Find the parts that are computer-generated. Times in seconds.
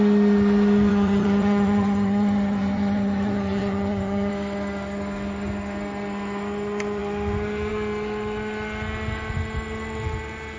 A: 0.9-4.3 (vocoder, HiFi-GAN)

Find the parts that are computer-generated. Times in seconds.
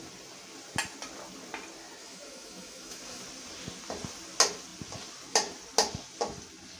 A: 2.0-3.2 (autoencoder, DAC-VAE)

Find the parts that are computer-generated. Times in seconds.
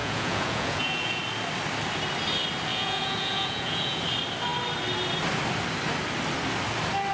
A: 0.0-1.2 (vocoder, Vocos); 2.7-4.0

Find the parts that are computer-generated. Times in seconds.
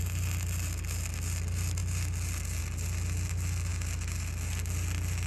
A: none